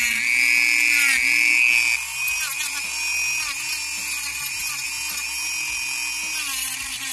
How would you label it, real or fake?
real